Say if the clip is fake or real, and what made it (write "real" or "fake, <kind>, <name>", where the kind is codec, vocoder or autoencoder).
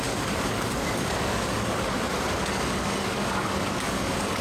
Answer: fake, codec, DAC